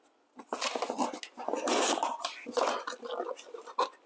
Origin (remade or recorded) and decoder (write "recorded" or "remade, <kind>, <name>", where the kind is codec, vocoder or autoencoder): recorded